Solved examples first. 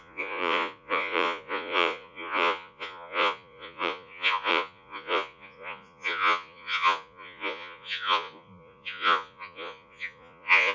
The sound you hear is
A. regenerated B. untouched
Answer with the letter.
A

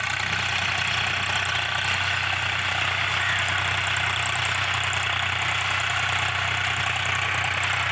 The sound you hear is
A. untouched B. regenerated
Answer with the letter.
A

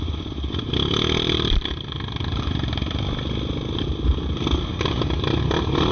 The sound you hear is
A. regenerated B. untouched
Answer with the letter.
B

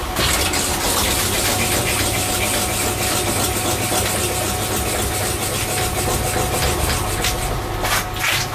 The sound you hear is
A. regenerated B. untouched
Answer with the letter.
B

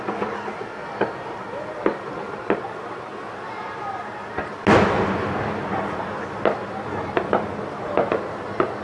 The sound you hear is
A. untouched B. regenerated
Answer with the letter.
A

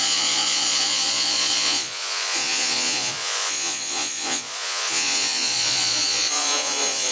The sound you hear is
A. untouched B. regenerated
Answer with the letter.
B